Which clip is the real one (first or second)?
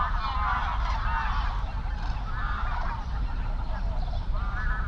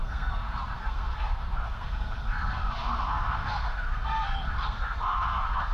first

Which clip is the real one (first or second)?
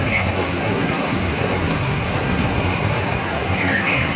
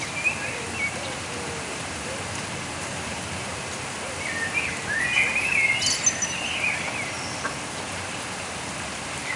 second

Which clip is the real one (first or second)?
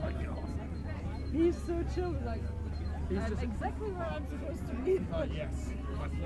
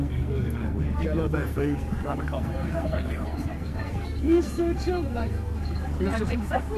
first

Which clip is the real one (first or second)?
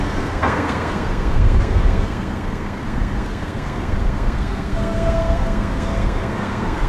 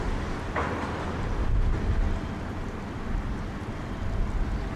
second